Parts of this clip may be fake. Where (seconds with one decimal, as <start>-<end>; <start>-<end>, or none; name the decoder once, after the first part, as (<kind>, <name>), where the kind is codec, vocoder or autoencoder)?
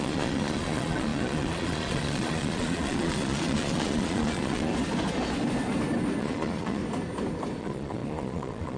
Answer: 0.0-4.7 (vocoder, Vocos); 6.2-6.8; 7.6-8.8